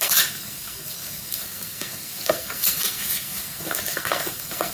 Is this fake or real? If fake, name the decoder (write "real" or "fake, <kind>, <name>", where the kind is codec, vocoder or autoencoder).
fake, codec, SNAC